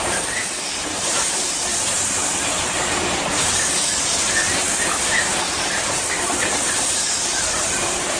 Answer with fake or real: fake